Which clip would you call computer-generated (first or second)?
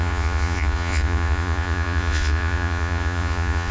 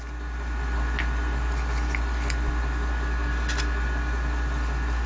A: first